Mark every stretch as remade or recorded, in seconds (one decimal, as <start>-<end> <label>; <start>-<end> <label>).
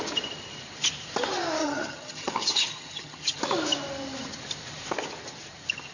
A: 0.0-1.6 recorded; 1.6-3.4 remade; 3.4-5.9 recorded